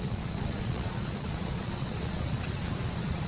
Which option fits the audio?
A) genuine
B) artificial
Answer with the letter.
B